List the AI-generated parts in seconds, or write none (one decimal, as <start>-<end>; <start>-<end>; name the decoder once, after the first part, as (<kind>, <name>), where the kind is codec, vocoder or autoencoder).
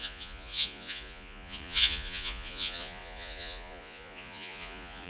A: 0.0-5.1 (vocoder, Vocos)